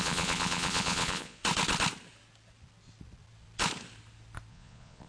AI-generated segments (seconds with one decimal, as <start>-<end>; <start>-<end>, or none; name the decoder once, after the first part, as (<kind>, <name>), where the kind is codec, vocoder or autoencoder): 0.0-1.4 (vocoder, Vocos); 4.5-5.1